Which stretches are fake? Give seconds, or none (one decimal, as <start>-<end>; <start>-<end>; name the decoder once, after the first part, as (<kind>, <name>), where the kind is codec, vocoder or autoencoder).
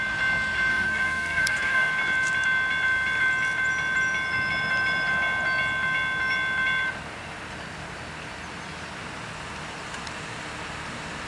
0.7-1.9 (codec, SNAC)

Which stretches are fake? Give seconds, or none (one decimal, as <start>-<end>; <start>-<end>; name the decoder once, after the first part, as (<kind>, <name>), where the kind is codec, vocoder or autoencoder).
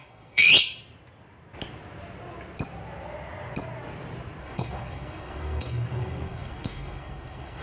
0.0-0.5 (codec, SNAC); 4.4-7.6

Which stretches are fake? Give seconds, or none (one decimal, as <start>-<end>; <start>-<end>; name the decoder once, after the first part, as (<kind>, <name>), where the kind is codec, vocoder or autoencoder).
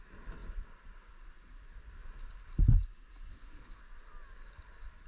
3.3-3.8 (codec, SNAC)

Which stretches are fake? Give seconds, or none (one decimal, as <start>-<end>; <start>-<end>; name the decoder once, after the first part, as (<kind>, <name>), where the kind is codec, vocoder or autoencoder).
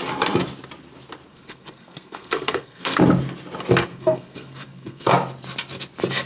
1.3-3.0 (codec, SNAC); 3.9-5.1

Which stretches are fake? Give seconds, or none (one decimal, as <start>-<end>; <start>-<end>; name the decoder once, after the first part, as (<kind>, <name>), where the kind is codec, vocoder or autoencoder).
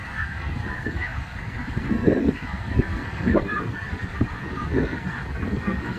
0.0-6.0 (codec, SNAC)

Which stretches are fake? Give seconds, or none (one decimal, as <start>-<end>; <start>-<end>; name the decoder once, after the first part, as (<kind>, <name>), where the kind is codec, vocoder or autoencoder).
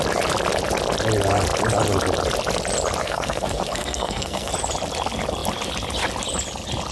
3.0-4.5 (codec, SNAC)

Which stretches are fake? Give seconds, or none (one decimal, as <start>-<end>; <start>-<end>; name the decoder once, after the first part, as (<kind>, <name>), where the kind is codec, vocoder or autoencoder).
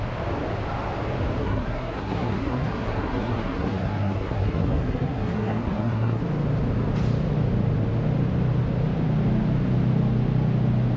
1.4-6.2 (codec, SNAC)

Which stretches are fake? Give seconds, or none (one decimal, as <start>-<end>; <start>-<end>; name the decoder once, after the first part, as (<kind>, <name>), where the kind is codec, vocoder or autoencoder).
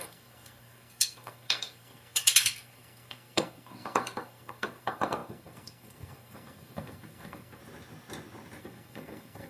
0.0-7.6 (codec, SNAC); 8.6-9.5